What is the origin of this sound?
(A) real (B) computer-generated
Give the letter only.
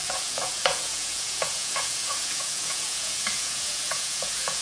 B